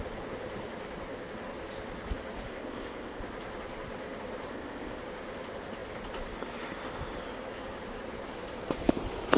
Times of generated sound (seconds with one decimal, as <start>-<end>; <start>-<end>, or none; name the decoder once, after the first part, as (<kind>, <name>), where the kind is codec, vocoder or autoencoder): 2.5-3.2 (codec, ZipCodec); 4.5-5.0